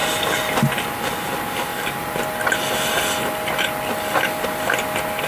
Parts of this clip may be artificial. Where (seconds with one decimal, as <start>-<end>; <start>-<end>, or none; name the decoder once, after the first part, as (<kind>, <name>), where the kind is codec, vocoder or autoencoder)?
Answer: none